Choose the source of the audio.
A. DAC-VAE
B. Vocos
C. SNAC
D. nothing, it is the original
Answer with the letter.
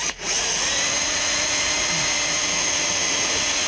B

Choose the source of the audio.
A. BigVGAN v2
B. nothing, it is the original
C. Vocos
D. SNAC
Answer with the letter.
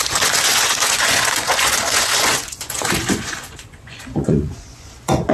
C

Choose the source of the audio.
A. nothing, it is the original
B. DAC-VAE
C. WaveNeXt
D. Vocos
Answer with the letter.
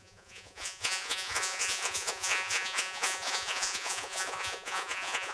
D